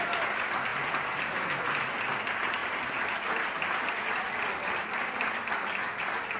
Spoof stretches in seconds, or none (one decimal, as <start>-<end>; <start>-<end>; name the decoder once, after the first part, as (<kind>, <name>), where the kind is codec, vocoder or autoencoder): 2.6-6.4 (vocoder, BigVGAN v2)

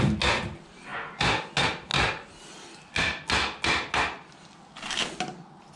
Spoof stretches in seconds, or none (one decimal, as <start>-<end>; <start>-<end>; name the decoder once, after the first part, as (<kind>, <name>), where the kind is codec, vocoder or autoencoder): none

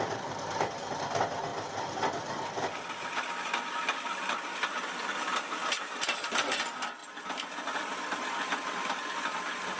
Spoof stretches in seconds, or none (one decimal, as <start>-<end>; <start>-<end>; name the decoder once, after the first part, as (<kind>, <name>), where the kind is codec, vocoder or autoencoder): 7.0-9.4 (vocoder, BigVGAN v2)

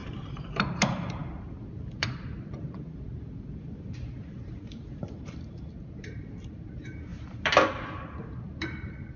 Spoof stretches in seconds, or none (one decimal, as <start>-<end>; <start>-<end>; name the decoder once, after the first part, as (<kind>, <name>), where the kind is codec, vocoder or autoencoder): 0.0-9.2 (vocoder, BigVGAN v2)